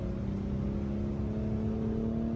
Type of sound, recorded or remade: recorded